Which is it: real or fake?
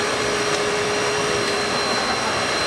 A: fake